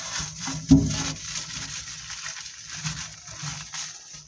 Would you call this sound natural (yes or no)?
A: yes